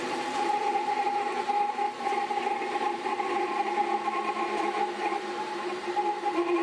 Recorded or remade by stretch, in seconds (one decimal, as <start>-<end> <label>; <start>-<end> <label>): 0.0-3.8 remade; 3.8-4.4 recorded; 4.4-6.6 remade